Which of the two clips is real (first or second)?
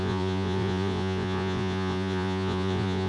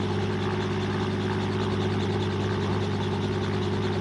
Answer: second